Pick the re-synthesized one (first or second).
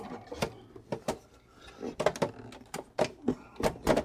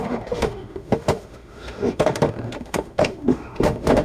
second